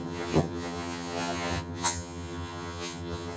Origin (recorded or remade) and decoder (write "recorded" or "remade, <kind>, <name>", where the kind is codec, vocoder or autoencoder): remade, vocoder, HiFi-GAN